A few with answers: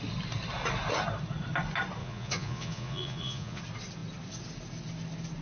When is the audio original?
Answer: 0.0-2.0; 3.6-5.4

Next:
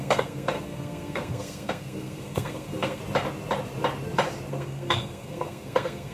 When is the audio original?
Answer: 3.0-4.5

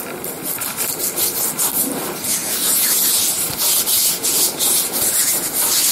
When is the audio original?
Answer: 0.0-2.4; 3.0-3.9; 5.5-5.9

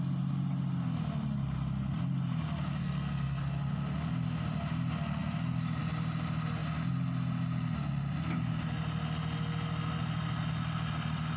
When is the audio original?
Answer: 0.0-2.8; 3.4-11.4

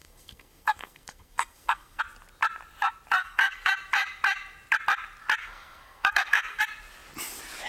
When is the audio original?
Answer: 2.0-3.2; 3.7-5.4; 6.6-7.7

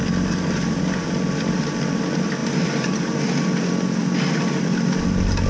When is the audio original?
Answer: 0.0-2.4; 3.2-5.5

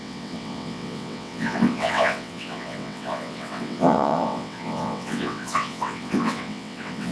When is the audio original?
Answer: none